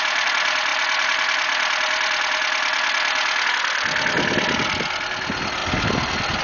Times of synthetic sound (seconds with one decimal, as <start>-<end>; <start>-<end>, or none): none